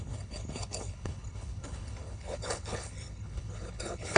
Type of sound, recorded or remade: remade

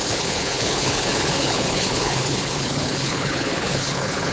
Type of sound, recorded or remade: remade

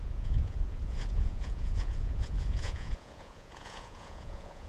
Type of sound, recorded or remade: remade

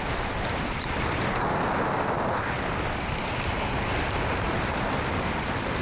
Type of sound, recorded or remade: recorded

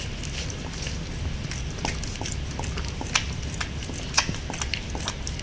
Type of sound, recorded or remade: recorded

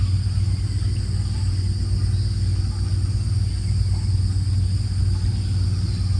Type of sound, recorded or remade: recorded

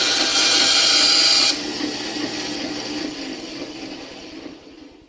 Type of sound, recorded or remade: recorded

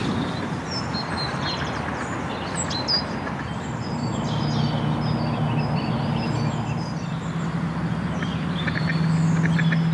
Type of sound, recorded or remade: recorded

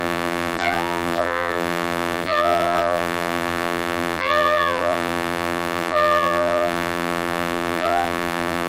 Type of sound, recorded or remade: remade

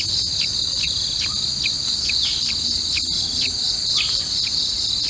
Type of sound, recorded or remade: recorded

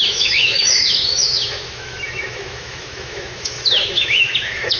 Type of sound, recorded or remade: remade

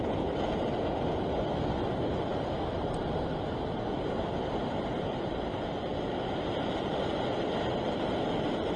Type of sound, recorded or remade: recorded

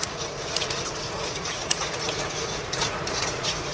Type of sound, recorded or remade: remade